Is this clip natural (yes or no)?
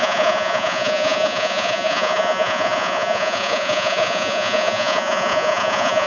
no